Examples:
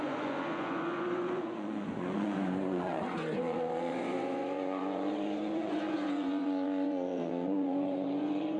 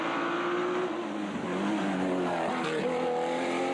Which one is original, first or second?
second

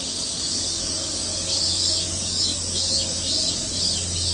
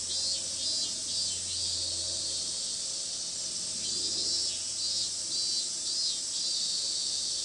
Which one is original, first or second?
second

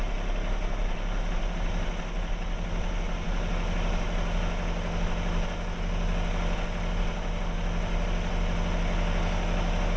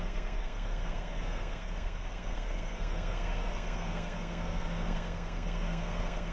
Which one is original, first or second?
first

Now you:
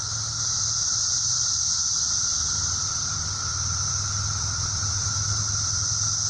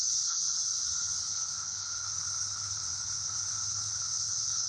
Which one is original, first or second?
first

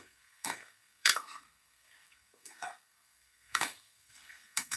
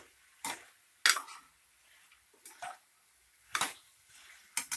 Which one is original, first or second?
second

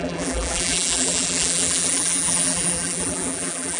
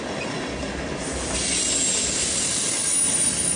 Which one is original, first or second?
second